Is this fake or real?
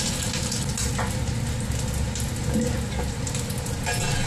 real